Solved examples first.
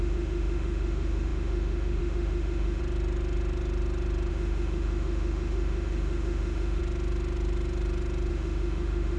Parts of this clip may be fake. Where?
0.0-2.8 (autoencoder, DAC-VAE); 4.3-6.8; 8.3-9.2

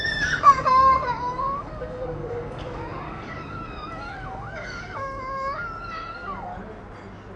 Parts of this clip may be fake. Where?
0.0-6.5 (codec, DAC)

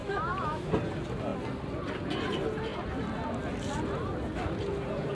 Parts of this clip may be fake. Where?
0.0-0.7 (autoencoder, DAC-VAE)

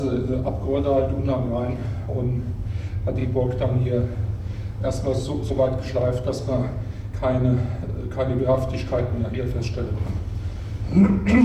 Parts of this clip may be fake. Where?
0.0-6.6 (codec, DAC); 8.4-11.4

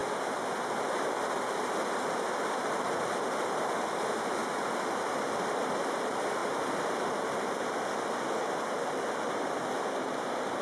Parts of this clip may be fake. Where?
2.0-4.4 (vocoder, BigVGAN v2); 5.8-10.6